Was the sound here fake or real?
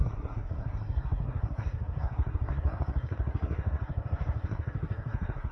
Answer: fake